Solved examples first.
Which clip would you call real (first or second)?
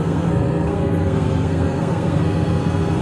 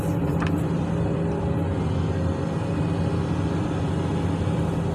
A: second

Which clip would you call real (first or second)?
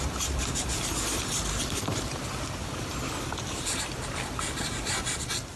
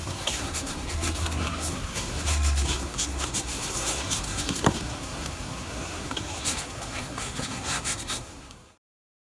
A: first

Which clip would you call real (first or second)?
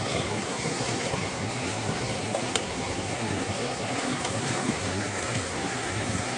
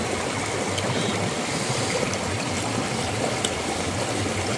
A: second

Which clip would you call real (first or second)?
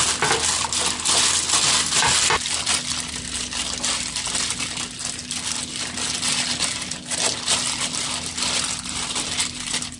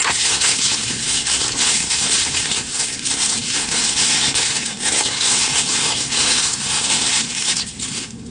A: first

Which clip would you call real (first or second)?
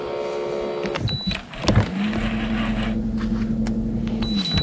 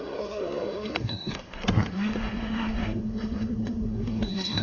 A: first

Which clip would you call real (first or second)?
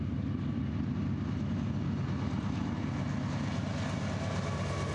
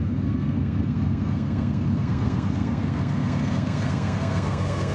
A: first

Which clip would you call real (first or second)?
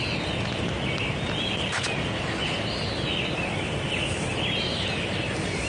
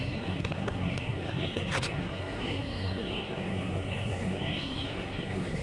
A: first